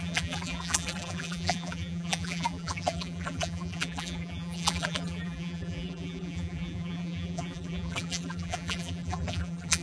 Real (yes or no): no